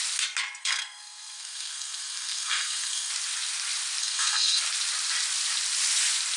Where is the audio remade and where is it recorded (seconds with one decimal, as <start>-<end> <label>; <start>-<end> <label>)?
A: 0.0-0.6 recorded; 0.6-3.1 remade; 3.1-4.0 recorded; 4.0-4.6 remade; 4.6-6.4 recorded